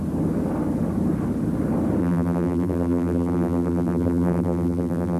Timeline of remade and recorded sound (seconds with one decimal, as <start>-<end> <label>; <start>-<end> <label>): 0.0-2.0 recorded; 2.0-5.2 remade

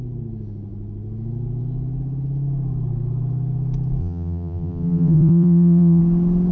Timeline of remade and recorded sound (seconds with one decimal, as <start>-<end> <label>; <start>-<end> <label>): 0.0-4.0 recorded; 4.0-6.0 remade; 6.0-6.5 recorded

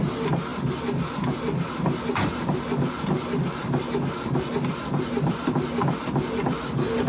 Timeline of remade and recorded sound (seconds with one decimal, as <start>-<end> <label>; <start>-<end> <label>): 0.0-7.1 recorded

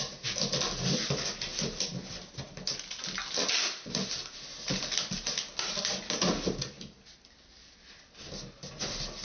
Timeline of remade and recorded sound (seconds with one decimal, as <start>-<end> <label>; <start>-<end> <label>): 0.0-9.2 recorded

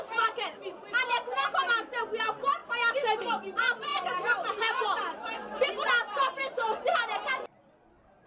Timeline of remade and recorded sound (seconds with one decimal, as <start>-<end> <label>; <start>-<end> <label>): 0.0-3.9 recorded; 3.9-4.5 remade; 4.5-8.3 recorded

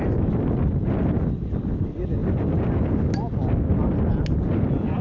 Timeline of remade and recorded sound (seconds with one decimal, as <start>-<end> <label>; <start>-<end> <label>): 0.0-5.0 recorded

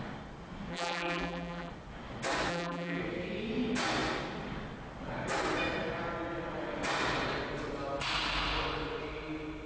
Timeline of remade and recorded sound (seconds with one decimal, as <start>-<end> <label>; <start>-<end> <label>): 0.0-0.7 recorded; 0.7-1.7 remade; 1.7-2.5 recorded; 2.5-3.0 remade; 3.0-9.7 recorded

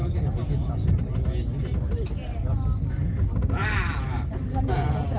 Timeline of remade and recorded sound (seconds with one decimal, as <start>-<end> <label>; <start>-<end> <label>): 0.0-3.6 recorded; 3.6-4.3 remade; 4.3-5.2 recorded